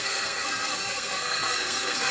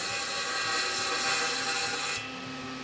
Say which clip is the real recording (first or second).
second